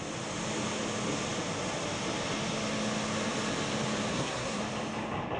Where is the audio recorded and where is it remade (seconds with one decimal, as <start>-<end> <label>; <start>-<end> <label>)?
0.0-4.1 recorded; 4.1-4.6 remade; 4.6-5.4 recorded